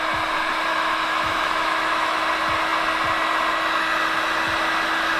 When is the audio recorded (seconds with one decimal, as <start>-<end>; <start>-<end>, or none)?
0.0-0.7; 2.2-5.2